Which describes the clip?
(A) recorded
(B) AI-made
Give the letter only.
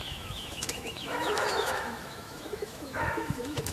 B